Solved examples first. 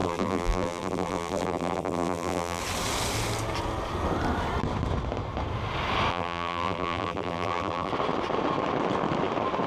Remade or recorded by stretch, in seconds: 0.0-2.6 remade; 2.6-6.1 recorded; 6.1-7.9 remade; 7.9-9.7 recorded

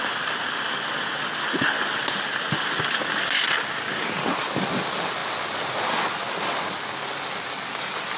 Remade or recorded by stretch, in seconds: 0.0-8.2 recorded

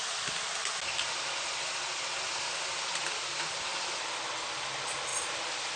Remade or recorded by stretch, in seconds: 0.0-5.8 recorded

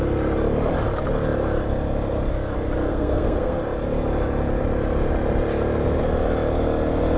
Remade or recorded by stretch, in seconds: 0.0-2.9 recorded; 2.9-3.6 remade; 3.6-7.2 recorded

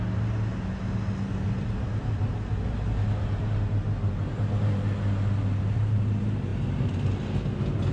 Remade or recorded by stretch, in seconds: 0.0-7.9 recorded

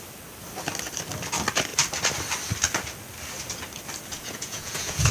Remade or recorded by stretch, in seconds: 0.0-4.1 recorded; 4.1-5.1 remade